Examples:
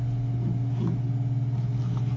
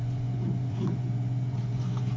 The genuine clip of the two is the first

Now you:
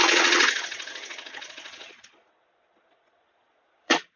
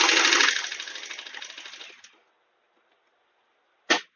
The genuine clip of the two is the second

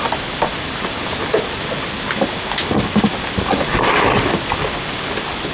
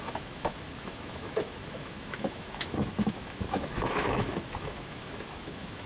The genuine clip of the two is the first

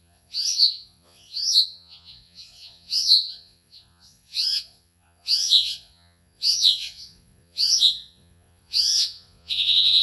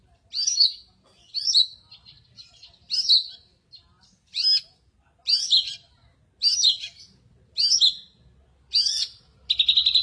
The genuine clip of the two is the second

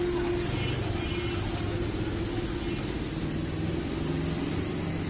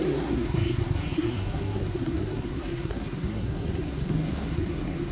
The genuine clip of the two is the first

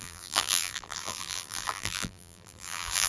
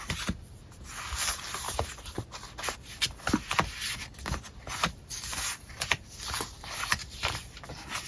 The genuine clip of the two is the second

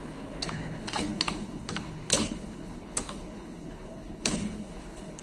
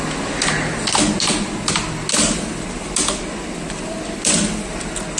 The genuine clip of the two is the second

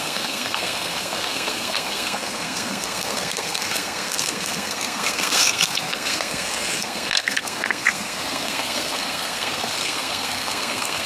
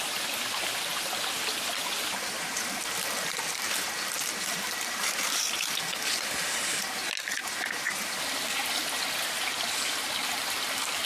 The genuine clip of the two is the second